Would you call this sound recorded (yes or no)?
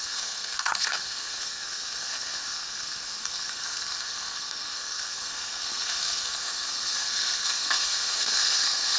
no